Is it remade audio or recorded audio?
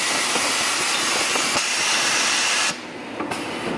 recorded